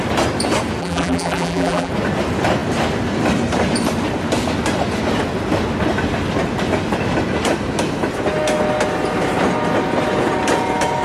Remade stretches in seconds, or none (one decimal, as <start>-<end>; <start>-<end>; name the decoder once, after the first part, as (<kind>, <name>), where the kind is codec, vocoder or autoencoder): 0.8-1.9 (vocoder, BigVGAN v2)